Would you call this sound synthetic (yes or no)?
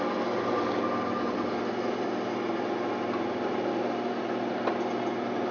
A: no